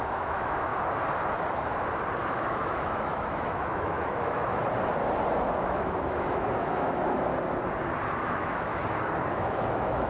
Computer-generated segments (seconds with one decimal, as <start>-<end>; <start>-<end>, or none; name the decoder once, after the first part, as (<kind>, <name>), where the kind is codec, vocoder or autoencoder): 0.0-0.7 (autoencoder, DAC-VAE); 2.3-4.6; 5.6-7.3; 8.2-8.7; 9.3-10.1